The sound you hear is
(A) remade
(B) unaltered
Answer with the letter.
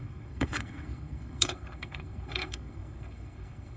A